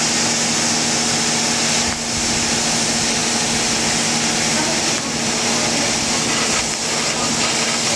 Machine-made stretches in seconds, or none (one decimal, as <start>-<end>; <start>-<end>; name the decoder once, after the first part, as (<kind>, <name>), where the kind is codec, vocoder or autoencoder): none